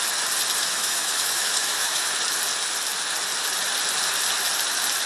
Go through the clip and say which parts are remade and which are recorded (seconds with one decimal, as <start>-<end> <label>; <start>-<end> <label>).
0.0-0.6 recorded; 0.6-2.1 remade; 2.1-5.1 recorded